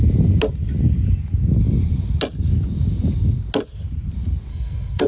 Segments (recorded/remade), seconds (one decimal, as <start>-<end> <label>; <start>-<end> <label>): 0.0-4.5 recorded; 4.5-5.1 remade